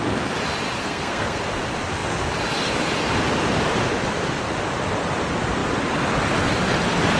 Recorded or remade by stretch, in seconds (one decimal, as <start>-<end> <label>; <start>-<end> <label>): 0.0-0.8 recorded; 0.8-1.4 remade; 1.4-7.2 recorded